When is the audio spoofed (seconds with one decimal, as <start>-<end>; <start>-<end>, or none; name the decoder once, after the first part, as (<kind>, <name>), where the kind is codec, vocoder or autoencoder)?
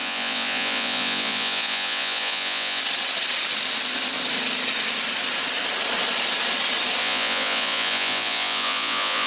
0.0-2.8 (vocoder, Vocos); 7.0-9.3